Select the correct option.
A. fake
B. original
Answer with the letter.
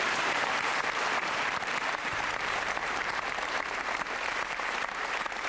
A